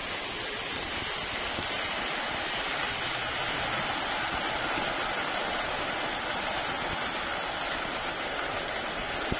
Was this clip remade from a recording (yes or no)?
no